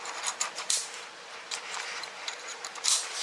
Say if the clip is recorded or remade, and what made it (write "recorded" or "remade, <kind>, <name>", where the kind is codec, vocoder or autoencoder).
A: remade, vocoder, BigVGAN v2